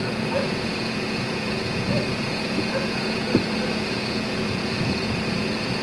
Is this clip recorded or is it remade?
remade